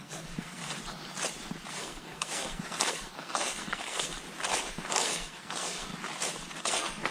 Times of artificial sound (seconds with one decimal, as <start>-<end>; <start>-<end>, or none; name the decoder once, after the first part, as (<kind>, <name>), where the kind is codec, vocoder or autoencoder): 0.0-0.6 (codec, SNAC); 1.7-4.1; 4.6-5.9; 6.6-7.1